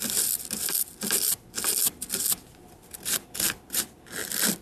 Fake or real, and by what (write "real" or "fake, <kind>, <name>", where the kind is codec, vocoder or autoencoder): fake, vocoder, BigVGAN v2